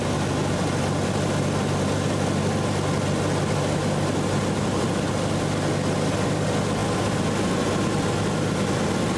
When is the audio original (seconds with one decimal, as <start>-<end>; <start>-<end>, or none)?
0.0-9.2